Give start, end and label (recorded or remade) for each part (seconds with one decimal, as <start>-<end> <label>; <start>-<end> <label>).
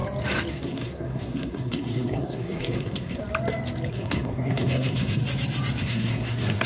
0.0-0.5 recorded; 0.5-3.2 remade; 3.2-3.9 recorded; 3.9-5.2 remade; 5.2-5.8 recorded; 5.8-6.7 remade